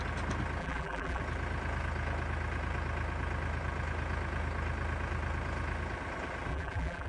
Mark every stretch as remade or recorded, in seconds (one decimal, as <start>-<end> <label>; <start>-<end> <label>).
0.0-0.6 recorded; 0.6-1.2 remade; 1.2-6.5 recorded; 6.5-7.1 remade